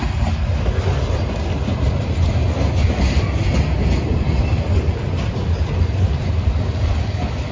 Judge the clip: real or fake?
real